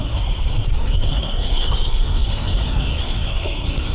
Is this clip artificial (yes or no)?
yes